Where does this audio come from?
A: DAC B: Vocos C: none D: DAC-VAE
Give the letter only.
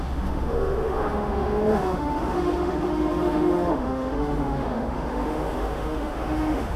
D